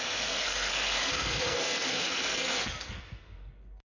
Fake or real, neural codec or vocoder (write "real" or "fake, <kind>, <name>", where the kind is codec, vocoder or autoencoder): fake, codec, SNAC